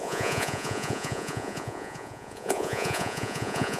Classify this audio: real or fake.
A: fake